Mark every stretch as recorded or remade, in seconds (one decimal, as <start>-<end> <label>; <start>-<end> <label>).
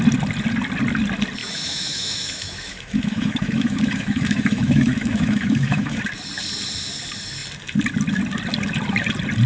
0.0-1.4 recorded; 1.4-6.0 remade; 6.0-9.5 recorded